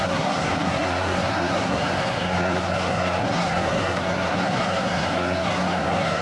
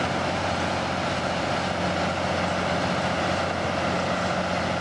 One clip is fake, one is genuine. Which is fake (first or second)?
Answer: first